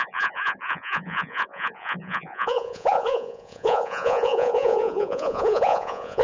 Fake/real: fake